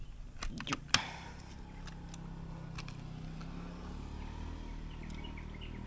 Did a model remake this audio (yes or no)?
no